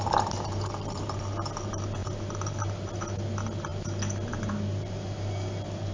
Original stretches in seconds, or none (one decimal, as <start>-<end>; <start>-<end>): 0.0-5.9